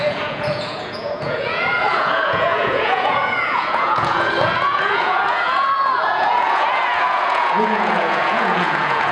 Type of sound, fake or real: fake